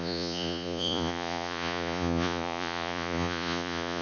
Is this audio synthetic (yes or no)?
yes